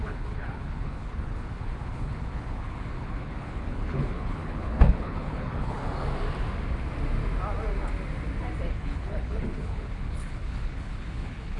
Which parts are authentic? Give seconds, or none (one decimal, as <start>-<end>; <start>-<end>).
5.8-8.7